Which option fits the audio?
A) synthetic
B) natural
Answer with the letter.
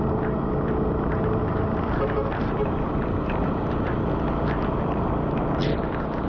B